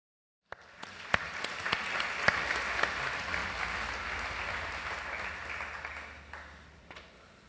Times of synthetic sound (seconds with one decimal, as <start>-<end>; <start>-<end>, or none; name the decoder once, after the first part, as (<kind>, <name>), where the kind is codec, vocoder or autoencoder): none